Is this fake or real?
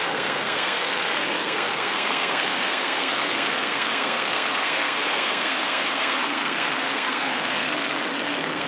fake